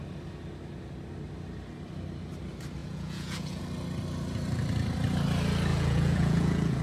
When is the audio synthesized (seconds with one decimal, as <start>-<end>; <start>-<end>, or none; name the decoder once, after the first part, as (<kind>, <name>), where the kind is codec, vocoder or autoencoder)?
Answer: 2.8-3.6 (vocoder, Vocos); 5.7-6.8